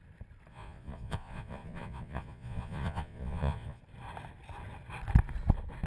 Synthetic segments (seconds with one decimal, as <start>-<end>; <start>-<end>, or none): 0.5-3.8